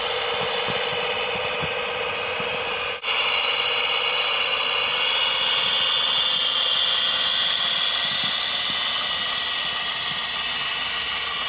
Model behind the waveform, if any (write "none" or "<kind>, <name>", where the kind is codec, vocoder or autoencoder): none